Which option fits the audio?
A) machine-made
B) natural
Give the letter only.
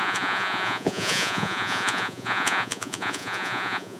A